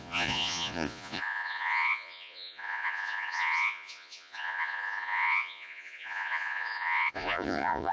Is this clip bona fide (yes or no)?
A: no